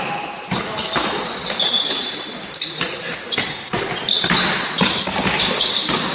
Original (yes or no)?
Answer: yes